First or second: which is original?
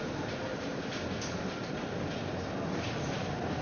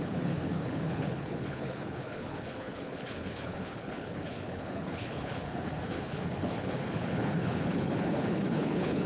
first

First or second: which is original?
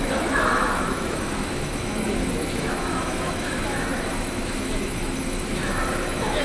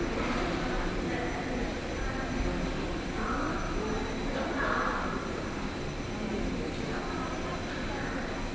second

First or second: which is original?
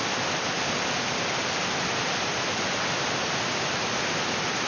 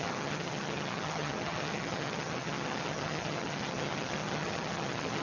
first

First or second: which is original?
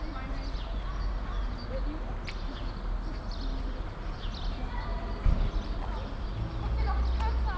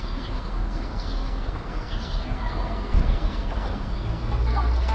first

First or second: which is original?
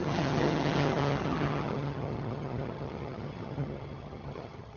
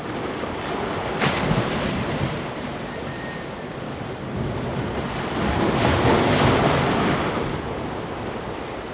second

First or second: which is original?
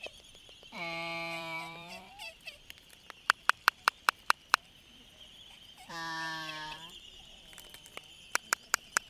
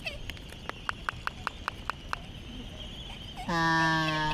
second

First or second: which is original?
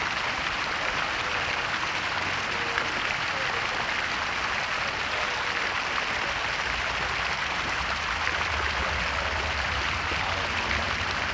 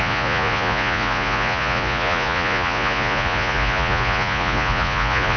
first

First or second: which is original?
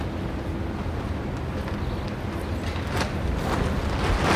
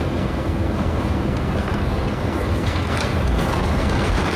first